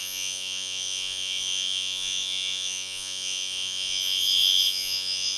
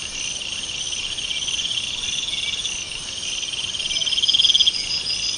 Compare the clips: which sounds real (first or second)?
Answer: second